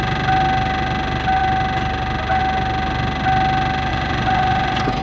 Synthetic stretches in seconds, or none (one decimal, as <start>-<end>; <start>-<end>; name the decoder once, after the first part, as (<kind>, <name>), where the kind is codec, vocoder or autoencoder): 3.9-5.0 (vocoder, Vocos)